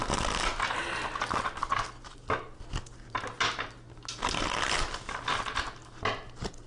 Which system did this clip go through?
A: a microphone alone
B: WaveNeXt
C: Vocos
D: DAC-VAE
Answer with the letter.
A